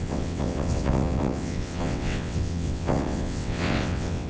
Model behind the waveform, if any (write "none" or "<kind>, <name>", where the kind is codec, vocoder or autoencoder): vocoder, WaveNeXt